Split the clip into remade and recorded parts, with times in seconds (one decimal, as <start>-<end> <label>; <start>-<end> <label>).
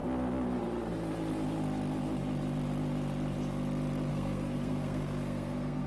0.0-4.1 recorded; 4.1-5.9 remade